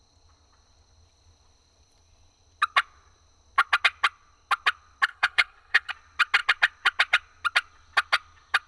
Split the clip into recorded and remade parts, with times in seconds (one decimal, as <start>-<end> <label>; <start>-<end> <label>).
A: 0.0-5.1 recorded; 5.1-5.9 remade; 5.9-8.7 recorded